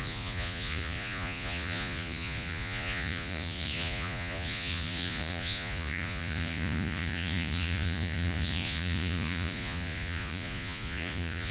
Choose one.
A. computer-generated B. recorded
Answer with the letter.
A